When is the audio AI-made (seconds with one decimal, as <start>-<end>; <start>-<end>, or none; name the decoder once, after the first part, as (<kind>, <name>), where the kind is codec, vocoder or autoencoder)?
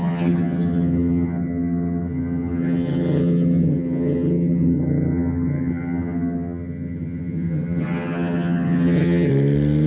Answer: 0.0-9.3 (vocoder, HiFi-GAN)